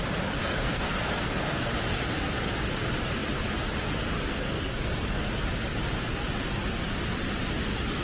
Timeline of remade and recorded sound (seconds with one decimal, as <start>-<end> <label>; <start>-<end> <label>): 0.0-0.4 recorded; 0.4-1.7 remade; 1.7-4.3 recorded; 4.3-5.3 remade; 5.3-8.0 recorded